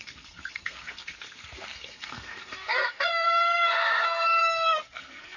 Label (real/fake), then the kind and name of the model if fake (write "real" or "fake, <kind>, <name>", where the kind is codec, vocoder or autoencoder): fake, codec, SNAC